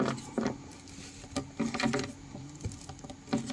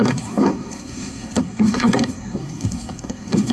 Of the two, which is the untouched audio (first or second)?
first